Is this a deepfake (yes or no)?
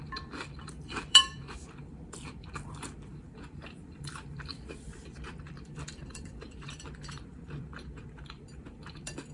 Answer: yes